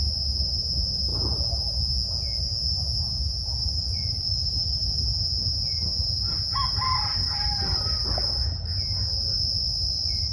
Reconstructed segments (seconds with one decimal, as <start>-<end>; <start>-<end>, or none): 3.6-5.2; 7.4-8.4